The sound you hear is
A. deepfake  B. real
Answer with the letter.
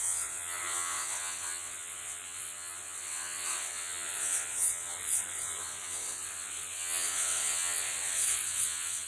A